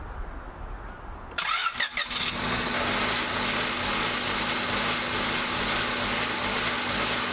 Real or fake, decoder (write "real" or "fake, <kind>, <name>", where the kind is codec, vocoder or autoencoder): real